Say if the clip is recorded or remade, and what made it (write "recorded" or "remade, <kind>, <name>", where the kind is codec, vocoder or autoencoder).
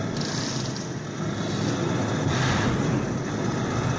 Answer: recorded